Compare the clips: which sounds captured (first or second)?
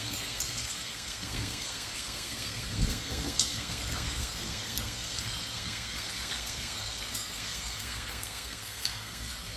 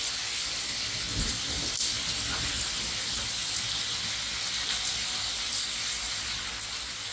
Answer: second